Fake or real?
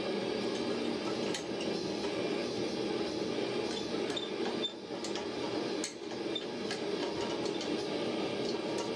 real